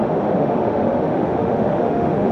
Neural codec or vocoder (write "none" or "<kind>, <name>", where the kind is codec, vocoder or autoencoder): autoencoder, DAC-VAE